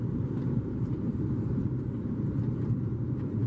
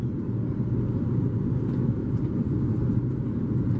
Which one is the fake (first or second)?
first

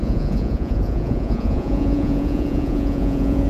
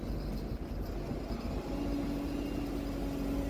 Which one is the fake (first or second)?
first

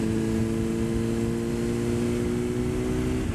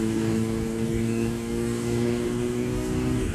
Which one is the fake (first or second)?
second